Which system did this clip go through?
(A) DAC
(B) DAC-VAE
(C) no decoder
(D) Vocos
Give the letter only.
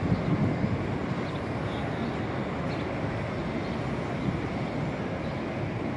C